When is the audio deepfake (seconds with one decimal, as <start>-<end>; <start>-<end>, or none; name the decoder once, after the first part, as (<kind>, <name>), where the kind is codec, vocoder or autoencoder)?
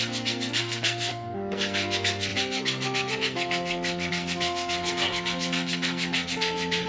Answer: 0.0-6.9 (codec, SNAC)